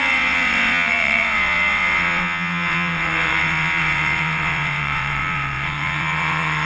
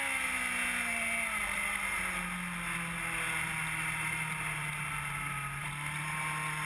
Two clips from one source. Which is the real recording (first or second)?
second